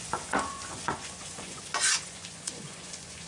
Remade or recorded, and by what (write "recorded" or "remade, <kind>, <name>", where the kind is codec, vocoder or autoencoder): remade, vocoder, Vocos